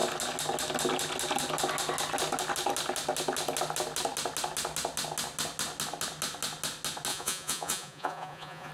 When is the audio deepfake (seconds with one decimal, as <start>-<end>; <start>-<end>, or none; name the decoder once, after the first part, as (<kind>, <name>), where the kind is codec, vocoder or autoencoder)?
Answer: 7.1-8.7 (vocoder, Vocos)